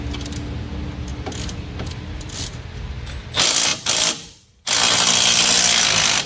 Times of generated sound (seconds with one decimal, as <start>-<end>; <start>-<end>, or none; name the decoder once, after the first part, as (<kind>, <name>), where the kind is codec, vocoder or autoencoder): none